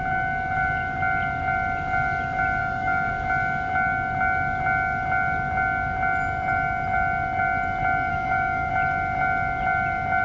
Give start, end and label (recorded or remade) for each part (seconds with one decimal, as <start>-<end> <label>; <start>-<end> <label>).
0.0-2.6 recorded; 2.6-3.1 remade; 3.1-8.1 recorded; 8.1-8.7 remade; 8.7-10.2 recorded